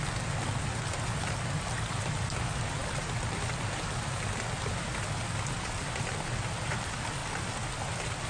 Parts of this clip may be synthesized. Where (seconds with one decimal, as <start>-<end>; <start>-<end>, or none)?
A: none